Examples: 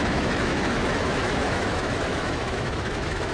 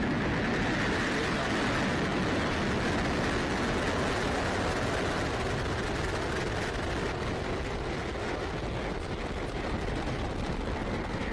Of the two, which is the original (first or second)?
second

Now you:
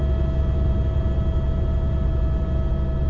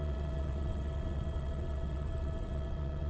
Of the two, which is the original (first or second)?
first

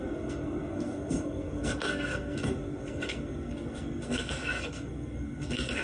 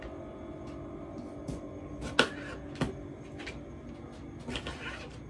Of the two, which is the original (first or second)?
second